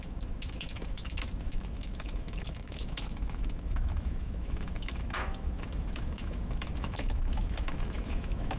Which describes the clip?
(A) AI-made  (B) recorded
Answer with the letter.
A